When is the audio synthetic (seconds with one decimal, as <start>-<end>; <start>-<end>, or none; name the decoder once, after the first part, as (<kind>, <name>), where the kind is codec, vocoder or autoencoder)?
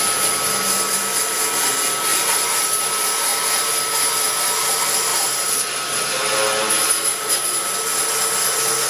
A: 2.1-2.8 (vocoder, BigVGAN v2); 5.1-6.1; 7.1-7.6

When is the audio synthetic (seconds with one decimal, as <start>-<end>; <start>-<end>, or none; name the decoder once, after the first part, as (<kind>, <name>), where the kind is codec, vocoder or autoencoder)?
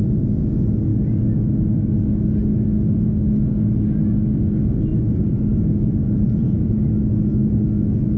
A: 4.9-6.9 (vocoder, BigVGAN v2)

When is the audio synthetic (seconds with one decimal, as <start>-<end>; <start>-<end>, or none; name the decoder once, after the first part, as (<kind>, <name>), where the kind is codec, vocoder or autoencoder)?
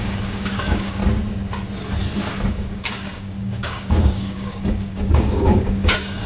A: 0.0-1.0 (codec, DAC); 2.5-6.3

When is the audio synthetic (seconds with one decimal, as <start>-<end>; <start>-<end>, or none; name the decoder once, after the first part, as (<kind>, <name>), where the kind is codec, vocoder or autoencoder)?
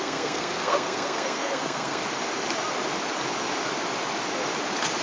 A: 0.0-2.0 (codec, SNAC)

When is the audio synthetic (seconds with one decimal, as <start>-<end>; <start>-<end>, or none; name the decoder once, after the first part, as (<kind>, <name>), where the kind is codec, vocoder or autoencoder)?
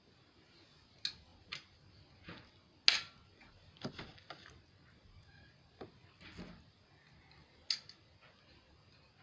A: 1.3-1.9 (vocoder, BigVGAN v2)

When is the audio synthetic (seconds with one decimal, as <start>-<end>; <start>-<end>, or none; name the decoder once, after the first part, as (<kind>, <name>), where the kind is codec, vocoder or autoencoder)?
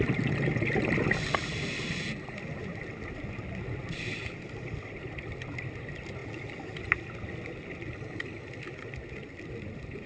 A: none